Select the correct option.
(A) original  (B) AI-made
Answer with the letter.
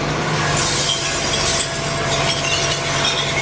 A